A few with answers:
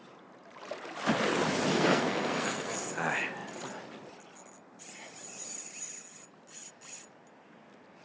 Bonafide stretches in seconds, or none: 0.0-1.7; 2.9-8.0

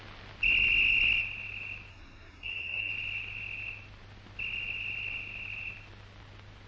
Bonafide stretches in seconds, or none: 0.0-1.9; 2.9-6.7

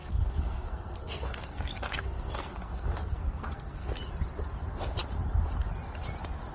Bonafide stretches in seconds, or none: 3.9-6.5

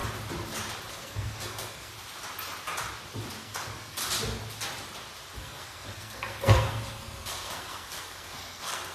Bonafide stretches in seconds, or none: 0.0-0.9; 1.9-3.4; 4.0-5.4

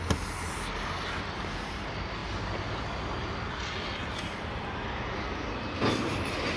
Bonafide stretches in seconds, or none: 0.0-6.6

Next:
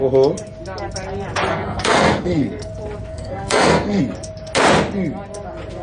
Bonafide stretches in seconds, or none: 0.0-1.5; 2.7-3.1; 4.0-5.8